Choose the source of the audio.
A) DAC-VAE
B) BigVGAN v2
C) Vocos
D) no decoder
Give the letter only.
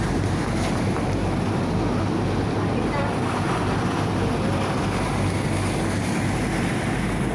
D